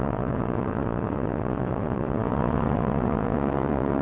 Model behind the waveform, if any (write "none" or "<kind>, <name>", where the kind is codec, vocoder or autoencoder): vocoder, WaveNeXt